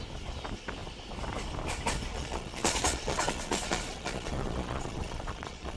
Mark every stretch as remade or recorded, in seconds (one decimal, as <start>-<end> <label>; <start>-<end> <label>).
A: 0.0-2.1 recorded; 2.1-5.8 remade